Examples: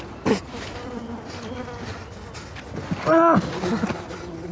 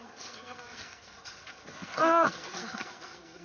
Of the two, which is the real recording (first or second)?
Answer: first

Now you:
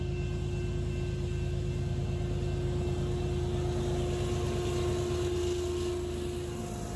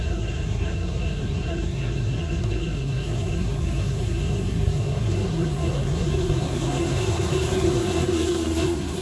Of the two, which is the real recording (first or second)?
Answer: first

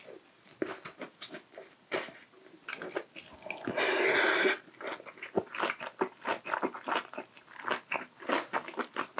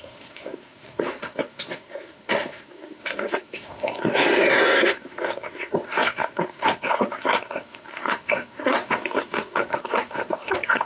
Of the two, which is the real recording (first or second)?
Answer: first